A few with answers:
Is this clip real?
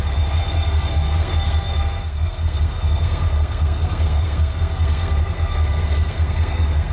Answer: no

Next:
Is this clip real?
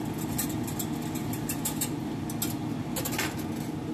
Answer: yes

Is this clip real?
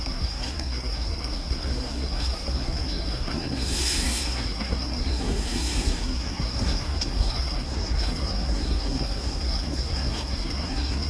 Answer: no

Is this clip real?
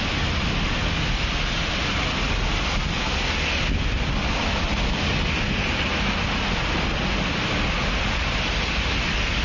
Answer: yes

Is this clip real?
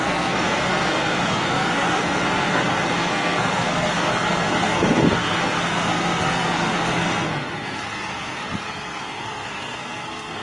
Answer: no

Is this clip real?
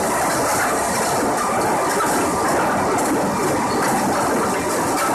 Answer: yes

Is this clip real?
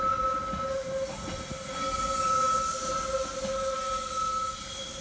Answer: yes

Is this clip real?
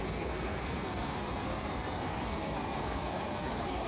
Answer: no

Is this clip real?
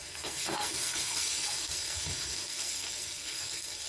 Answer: no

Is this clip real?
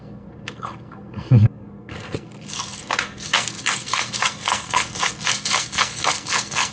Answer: no